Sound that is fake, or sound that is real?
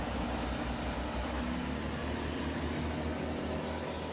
real